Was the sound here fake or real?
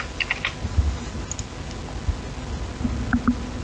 real